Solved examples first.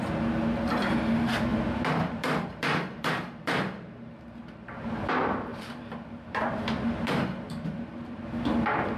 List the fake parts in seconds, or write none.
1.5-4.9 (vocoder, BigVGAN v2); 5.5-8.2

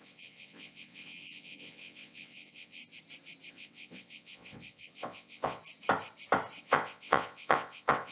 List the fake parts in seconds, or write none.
0.0-2.8 (vocoder, WaveNeXt); 3.5-5.6; 6.6-8.1

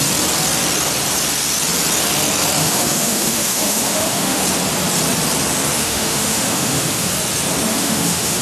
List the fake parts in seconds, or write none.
2.6-4.4 (autoencoder, DAC-VAE); 5.8-7.1; 7.7-8.4

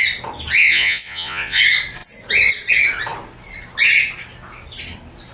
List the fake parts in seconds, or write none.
0.6-1.6 (vocoder, Vocos)

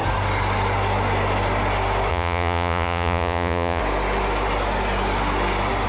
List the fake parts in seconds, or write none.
2.1-3.8 (vocoder, Vocos)

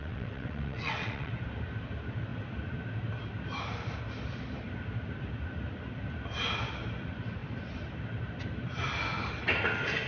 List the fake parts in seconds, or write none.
0.0-1.3 (vocoder, WaveNeXt)

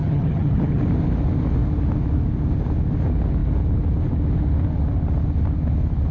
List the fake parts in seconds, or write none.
0.0-0.8 (vocoder, HiFi-GAN)